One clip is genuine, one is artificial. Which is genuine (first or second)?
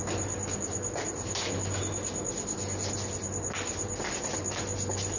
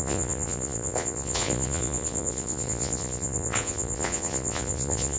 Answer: first